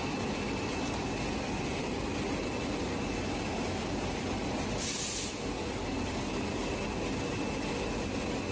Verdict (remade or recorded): recorded